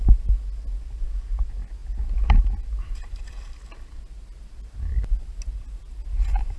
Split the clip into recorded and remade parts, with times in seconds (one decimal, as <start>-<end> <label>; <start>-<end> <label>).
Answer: 0.0-6.6 recorded